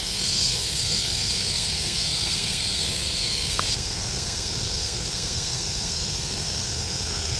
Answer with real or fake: fake